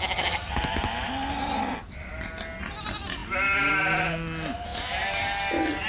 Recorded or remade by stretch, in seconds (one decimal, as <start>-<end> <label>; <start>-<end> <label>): 0.0-5.9 recorded